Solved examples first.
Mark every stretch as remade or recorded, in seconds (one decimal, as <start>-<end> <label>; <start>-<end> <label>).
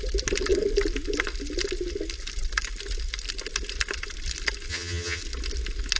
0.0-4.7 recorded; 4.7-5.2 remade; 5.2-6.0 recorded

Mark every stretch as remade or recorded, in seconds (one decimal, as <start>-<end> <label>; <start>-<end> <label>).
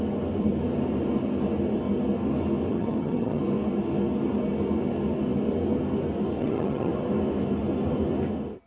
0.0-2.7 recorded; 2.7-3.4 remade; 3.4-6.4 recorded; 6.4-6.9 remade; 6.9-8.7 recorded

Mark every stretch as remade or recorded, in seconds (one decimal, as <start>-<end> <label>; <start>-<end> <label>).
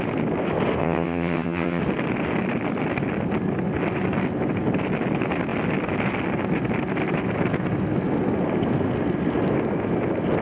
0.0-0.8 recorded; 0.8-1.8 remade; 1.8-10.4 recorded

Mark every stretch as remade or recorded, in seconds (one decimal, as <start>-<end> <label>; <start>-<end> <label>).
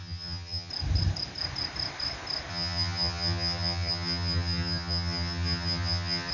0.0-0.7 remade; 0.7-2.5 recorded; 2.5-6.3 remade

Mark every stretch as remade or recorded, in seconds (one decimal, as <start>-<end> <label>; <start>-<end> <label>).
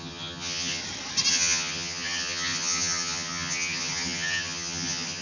0.0-0.8 remade; 0.8-1.3 recorded; 1.3-5.2 remade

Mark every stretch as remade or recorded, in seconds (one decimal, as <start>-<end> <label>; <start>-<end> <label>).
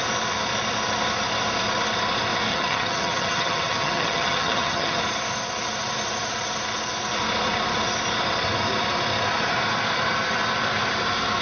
0.0-2.5 recorded; 2.5-5.0 remade; 5.0-11.4 recorded